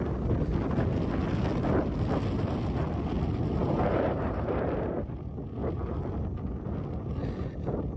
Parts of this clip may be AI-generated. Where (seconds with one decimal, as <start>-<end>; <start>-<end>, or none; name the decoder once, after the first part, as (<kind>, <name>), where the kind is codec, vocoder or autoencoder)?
3.6-4.9 (vocoder, BigVGAN v2)